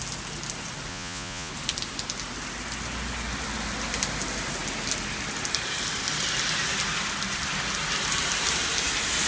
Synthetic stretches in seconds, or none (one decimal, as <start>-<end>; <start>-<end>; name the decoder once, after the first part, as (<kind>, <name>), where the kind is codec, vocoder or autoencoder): 0.9-1.5 (vocoder, Vocos)